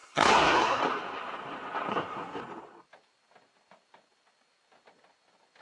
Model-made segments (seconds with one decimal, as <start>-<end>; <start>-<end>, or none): 0.0-0.8; 1.9-2.4